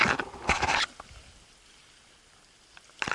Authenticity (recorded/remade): recorded